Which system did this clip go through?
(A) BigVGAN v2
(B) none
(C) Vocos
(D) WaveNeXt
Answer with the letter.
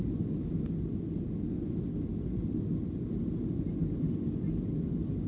B